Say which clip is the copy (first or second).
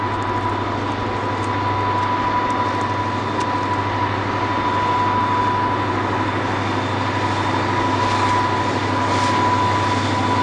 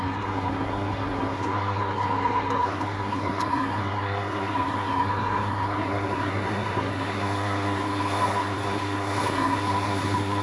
second